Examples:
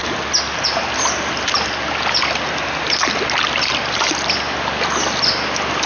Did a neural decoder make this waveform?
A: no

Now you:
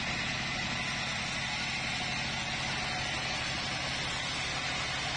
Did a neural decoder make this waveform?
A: no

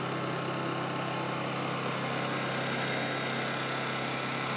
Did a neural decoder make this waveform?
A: no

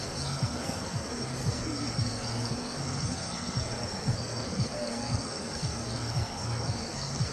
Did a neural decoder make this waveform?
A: yes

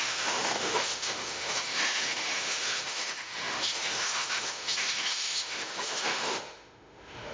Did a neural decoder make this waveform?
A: yes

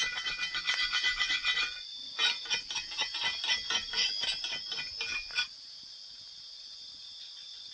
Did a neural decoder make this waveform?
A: no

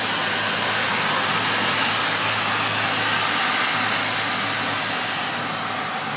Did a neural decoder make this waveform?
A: no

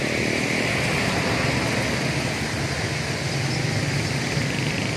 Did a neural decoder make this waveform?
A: no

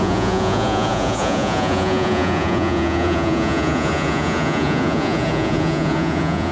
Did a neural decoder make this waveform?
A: yes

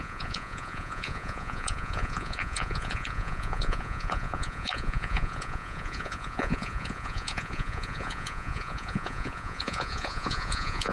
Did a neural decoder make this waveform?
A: yes